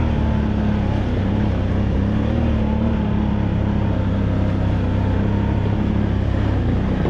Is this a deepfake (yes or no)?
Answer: no